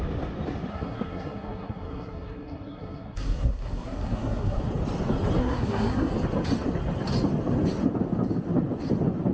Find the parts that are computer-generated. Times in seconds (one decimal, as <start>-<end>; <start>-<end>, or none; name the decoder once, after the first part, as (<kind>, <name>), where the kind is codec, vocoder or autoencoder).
0.7-4.6 (codec, SNAC); 5.4-6.1